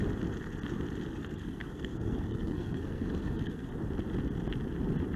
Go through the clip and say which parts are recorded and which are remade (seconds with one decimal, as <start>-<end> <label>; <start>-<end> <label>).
0.0-1.2 recorded; 1.2-3.7 remade; 3.7-5.2 recorded